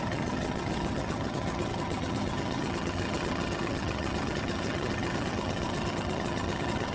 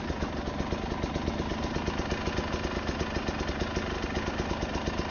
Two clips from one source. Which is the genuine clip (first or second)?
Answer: second